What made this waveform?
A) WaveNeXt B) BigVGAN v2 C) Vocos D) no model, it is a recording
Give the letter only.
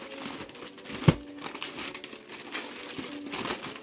D